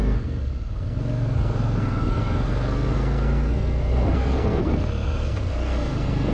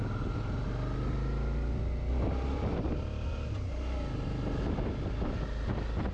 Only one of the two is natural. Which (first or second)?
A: second